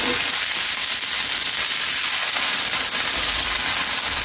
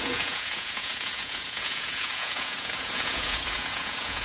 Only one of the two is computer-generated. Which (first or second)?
second